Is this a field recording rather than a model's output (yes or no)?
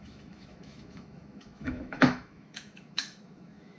no